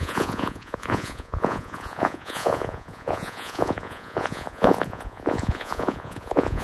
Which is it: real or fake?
fake